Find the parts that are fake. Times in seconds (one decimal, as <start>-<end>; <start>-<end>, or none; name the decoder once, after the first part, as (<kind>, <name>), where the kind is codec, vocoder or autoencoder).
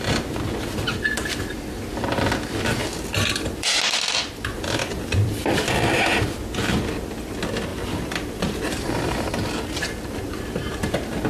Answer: 2.8-6.0 (vocoder, BigVGAN v2); 7.7-10.4